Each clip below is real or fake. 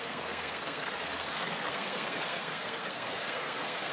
fake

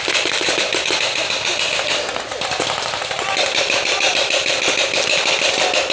real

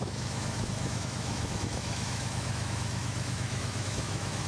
fake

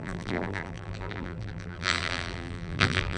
fake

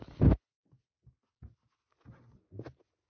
real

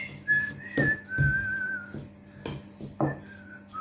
real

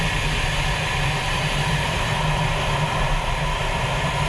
fake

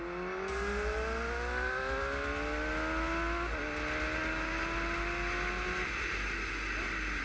real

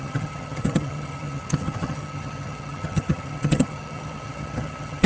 fake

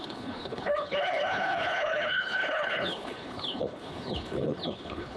fake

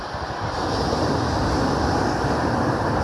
fake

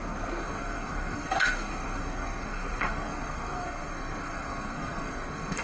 fake